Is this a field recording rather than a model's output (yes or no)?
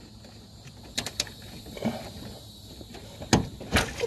yes